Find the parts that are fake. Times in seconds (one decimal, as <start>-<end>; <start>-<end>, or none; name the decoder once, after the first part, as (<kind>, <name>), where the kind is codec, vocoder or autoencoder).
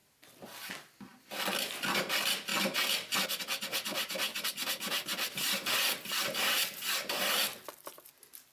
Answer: 1.1-1.7 (vocoder, BigVGAN v2); 4.3-7.0